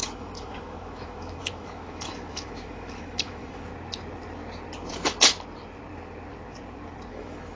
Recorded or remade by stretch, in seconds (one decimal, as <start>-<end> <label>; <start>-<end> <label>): 0.0-3.7 remade; 3.7-7.1 recorded; 7.1-7.6 remade